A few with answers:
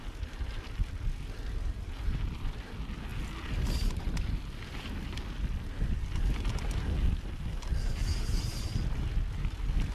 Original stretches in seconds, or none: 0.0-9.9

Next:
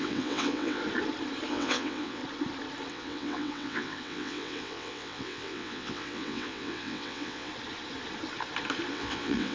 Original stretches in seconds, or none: 0.8-1.5; 2.2-2.9; 7.5-8.9

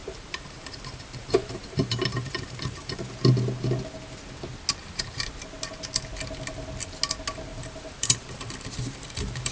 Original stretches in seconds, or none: 3.0-4.8; 5.3-7.5

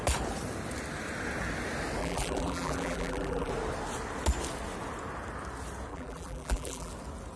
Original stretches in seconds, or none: 0.0-2.0; 3.5-5.9; 6.9-7.4

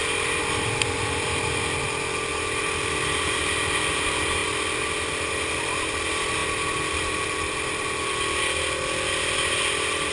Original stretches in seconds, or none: 0.0-10.1